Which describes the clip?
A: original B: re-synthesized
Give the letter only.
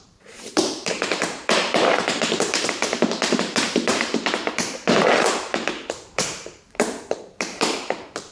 B